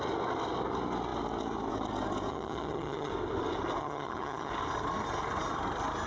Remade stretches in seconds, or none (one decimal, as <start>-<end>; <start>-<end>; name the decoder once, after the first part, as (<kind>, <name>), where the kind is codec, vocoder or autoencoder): 2.3-3.1 (vocoder, HiFi-GAN); 3.8-4.5